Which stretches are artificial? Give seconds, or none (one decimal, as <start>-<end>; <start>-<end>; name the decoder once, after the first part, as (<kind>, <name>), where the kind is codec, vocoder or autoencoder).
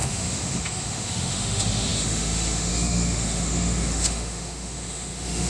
0.0-5.5 (autoencoder, DAC-VAE)